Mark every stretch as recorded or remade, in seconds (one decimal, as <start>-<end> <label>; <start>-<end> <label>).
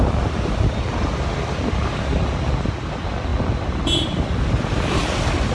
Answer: 0.0-5.5 recorded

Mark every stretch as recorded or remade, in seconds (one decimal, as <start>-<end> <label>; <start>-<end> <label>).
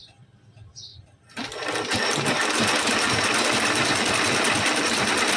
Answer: 0.0-5.4 recorded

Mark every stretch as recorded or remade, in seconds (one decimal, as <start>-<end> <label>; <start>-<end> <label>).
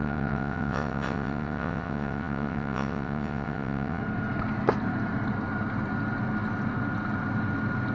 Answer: 0.0-4.0 remade; 4.0-7.9 recorded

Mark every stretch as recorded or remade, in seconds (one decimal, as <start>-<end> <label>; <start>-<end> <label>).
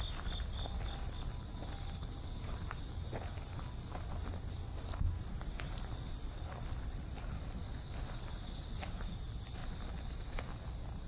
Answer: 0.0-11.1 recorded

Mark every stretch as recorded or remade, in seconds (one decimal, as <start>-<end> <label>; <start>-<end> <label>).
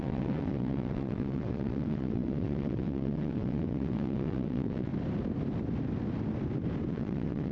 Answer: 0.0-4.9 remade; 4.9-6.9 recorded; 6.9-7.5 remade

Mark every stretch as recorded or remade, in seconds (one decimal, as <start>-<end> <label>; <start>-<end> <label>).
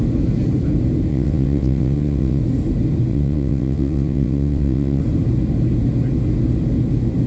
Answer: 0.0-1.1 recorded; 1.1-2.4 remade; 2.4-3.1 recorded; 3.1-5.0 remade; 5.0-7.3 recorded